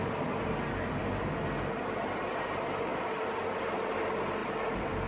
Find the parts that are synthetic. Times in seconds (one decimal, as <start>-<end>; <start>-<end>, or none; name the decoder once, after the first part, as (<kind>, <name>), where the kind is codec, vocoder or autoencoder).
none